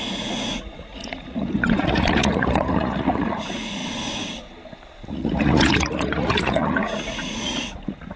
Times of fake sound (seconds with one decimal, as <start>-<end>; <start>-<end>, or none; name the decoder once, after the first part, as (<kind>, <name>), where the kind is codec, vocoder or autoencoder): 0.0-3.8 (vocoder, Vocos); 5.1-8.2